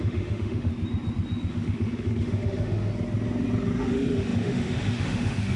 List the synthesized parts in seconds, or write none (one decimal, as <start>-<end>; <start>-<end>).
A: 0.0-0.7; 1.5-2.9; 3.8-5.6